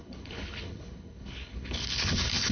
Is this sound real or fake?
fake